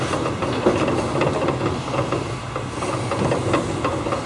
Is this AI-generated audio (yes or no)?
no